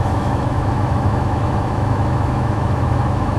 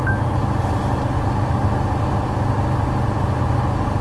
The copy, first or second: first